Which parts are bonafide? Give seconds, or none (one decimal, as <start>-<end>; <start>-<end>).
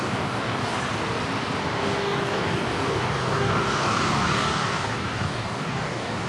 0.8-1.6